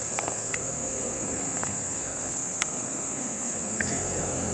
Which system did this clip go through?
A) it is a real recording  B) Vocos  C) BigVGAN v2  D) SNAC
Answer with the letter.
D